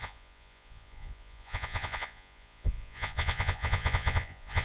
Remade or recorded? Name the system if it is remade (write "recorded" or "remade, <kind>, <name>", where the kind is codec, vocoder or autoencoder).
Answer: remade, vocoder, Vocos